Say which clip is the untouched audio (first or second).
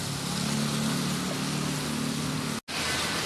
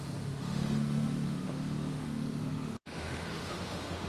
first